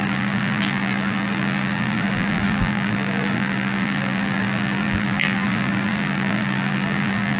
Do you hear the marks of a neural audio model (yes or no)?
yes